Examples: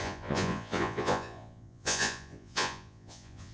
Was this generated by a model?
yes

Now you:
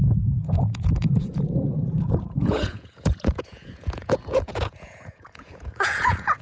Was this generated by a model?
yes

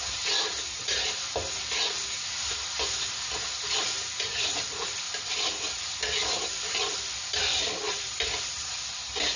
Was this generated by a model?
no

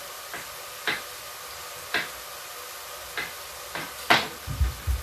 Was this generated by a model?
no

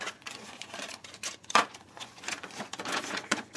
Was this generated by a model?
yes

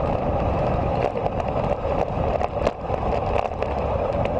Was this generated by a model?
no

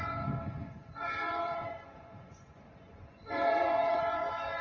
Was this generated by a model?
yes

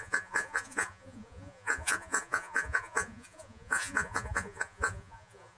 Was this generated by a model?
yes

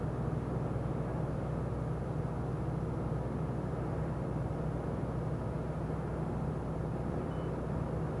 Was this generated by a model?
no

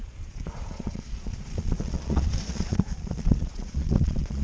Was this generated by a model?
yes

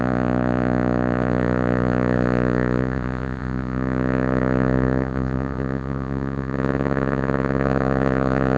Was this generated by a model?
yes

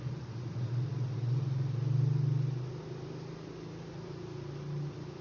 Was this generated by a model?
no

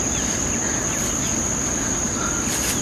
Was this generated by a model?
no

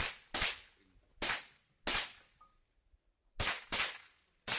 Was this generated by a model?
no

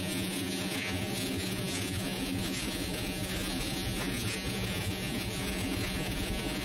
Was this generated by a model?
yes